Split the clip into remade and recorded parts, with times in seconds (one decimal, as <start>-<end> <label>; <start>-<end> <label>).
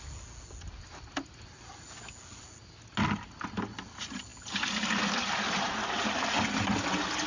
0.0-7.3 recorded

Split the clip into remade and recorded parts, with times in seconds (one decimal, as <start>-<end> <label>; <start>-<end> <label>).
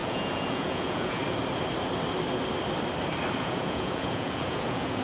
0.0-1.2 remade; 1.2-3.4 recorded; 3.4-5.0 remade